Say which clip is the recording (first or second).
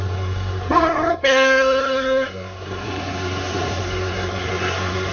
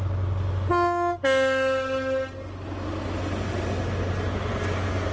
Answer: second